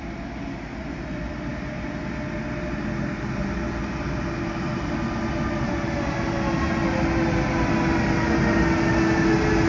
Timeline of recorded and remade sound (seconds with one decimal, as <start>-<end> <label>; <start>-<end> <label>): 0.0-9.7 recorded

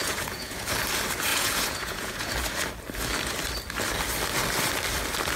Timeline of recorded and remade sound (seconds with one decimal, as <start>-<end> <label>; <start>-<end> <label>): 0.0-0.7 remade; 0.7-1.3 recorded; 1.3-2.3 remade; 2.3-5.4 recorded

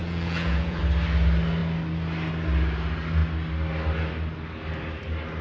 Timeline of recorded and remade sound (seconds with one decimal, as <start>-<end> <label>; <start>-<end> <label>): 0.0-0.8 remade; 0.8-5.4 recorded

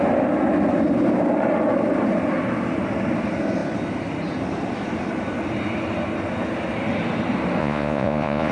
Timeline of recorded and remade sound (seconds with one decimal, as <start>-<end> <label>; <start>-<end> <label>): 0.0-7.6 recorded; 7.6-8.5 remade